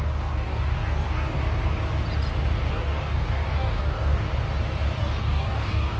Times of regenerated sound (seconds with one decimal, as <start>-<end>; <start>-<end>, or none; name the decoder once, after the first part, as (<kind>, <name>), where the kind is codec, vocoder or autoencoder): 0.0-1.4 (codec, DAC); 2.7-4.3; 5.0-6.0